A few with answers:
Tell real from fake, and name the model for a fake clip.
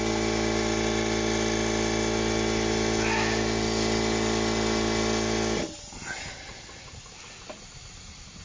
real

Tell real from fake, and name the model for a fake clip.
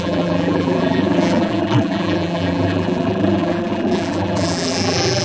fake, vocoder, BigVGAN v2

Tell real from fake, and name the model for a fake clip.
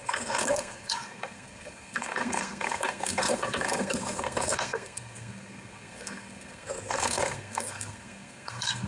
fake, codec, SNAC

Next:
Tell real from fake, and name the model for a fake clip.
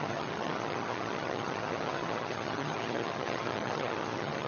fake, vocoder, HiFi-GAN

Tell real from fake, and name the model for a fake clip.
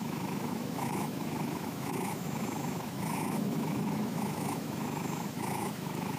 fake, autoencoder, DAC-VAE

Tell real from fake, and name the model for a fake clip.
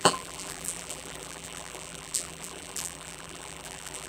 fake, vocoder, BigVGAN v2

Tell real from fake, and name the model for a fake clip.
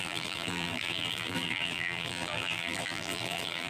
fake, vocoder, BigVGAN v2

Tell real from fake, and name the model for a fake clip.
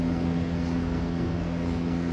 fake, codec, SNAC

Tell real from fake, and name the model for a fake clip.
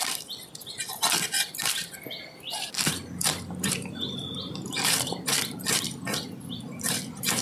fake, vocoder, BigVGAN v2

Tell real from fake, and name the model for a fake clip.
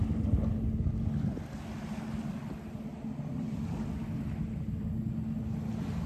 real